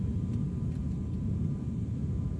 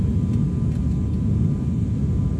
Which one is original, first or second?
second